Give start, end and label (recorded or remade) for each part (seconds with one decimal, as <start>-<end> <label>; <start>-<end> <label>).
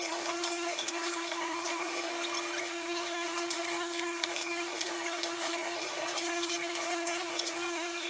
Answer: 0.0-2.1 remade; 2.1-2.6 recorded; 2.6-8.1 remade